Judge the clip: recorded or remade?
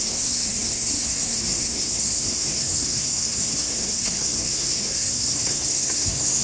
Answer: remade